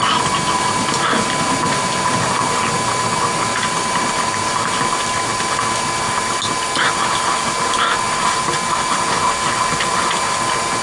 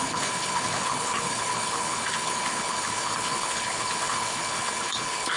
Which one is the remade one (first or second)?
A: second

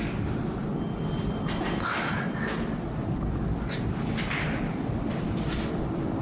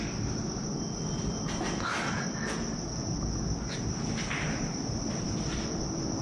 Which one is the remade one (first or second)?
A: first